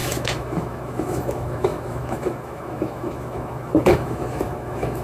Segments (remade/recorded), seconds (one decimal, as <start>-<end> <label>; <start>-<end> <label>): 0.0-5.0 remade